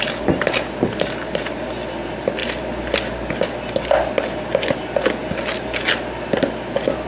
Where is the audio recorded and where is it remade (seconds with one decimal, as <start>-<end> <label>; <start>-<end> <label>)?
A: 0.0-7.1 recorded